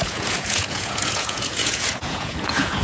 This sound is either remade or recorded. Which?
remade